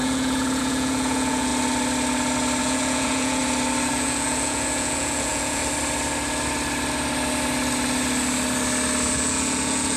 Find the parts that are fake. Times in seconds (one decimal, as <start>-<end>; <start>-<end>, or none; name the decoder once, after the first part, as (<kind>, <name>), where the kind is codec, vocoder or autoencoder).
0.0-1.5 (vocoder, Vocos); 2.6-3.4; 3.9-5.6; 9.1-10.0